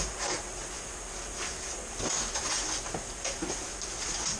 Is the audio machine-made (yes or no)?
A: no